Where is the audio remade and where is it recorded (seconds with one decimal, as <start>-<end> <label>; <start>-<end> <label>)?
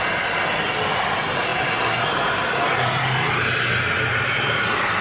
0.0-5.0 recorded